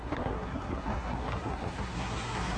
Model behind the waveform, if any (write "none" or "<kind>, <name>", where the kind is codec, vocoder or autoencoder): codec, SNAC